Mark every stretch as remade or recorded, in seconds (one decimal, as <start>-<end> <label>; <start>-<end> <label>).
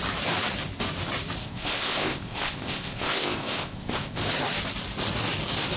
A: 0.0-1.4 recorded; 1.4-4.2 remade; 4.2-5.8 recorded